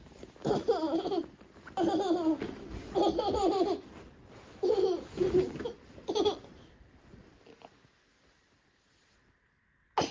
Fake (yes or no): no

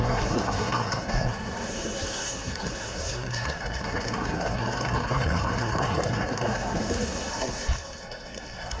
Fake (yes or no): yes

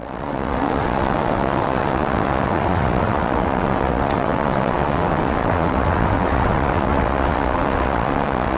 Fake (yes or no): yes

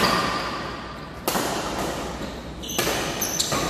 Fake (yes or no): no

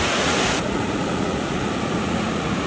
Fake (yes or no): yes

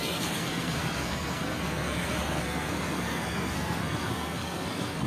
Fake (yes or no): yes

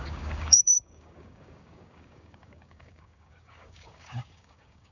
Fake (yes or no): yes